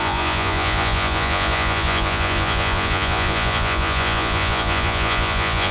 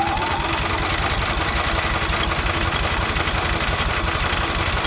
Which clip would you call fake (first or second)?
first